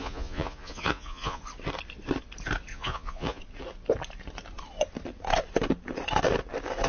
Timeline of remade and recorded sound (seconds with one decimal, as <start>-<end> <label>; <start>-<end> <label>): 0.0-1.4 remade; 1.4-2.7 recorded; 2.7-3.4 remade; 3.4-6.9 recorded